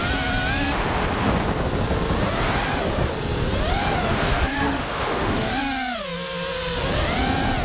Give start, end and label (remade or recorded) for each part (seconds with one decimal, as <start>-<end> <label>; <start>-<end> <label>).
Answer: 0.0-4.1 recorded; 4.1-5.6 remade; 5.6-7.6 recorded